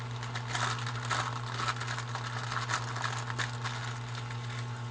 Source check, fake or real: real